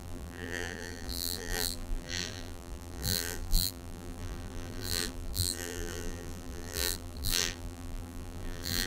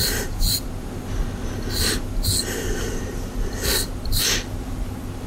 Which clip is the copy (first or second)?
first